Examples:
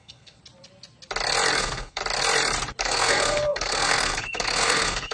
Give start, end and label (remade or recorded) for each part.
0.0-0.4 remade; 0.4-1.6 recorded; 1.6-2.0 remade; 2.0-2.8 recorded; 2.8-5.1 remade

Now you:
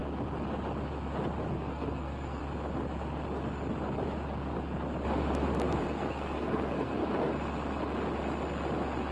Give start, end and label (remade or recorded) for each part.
0.0-1.5 recorded; 1.5-2.4 remade; 2.4-5.8 recorded; 5.8-7.0 remade; 7.0-9.1 recorded

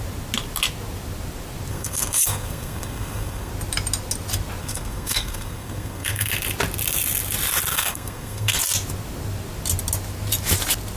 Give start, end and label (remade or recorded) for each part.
0.0-1.7 recorded; 1.7-3.5 remade; 3.5-4.6 recorded; 4.6-6.3 remade; 6.3-7.7 recorded; 7.7-8.6 remade; 8.6-11.0 recorded

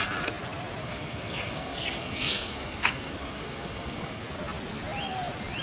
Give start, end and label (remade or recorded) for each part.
0.0-0.8 recorded; 0.8-4.2 remade; 4.2-5.6 recorded

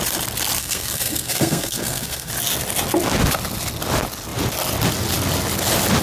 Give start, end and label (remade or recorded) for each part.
0.0-0.6 recorded; 0.6-2.3 remade; 2.3-6.0 recorded

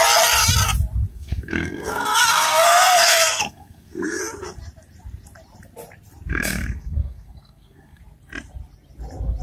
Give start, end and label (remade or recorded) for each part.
0.0-1.1 recorded; 1.1-4.2 remade; 4.2-6.3 recorded; 6.3-8.0 remade; 8.0-9.4 recorded

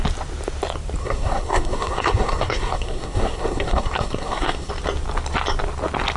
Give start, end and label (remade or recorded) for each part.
0.0-1.0 recorded; 1.0-4.7 remade; 4.7-6.2 recorded

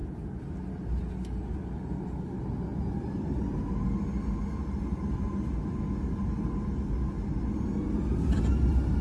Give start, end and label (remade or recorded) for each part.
0.0-9.0 recorded